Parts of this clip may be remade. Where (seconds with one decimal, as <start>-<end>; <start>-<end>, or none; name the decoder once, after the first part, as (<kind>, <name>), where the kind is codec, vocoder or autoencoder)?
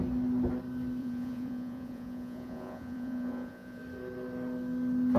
1.0-3.8 (vocoder, Vocos)